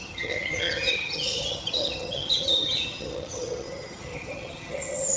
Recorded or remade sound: remade